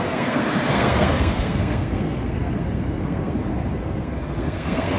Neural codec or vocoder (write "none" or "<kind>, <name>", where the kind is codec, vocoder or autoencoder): codec, SNAC